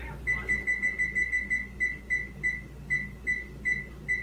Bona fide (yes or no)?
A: yes